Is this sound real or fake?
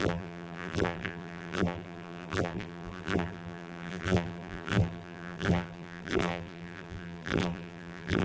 fake